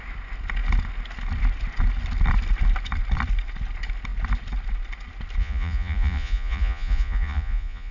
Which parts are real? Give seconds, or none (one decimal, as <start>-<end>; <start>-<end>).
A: 0.0-5.4